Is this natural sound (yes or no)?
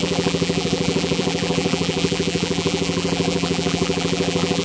no